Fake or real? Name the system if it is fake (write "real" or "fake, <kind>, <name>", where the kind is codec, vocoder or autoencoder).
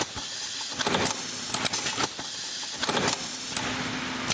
real